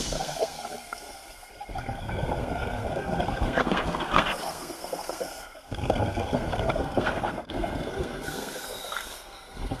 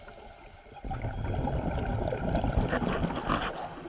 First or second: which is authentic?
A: second